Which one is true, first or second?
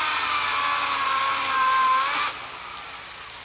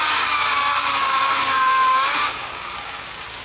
first